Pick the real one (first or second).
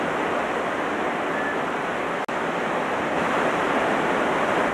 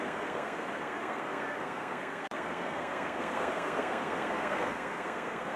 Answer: first